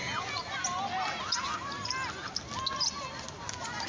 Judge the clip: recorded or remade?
recorded